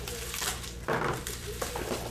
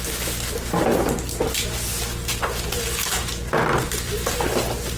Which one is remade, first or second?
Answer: first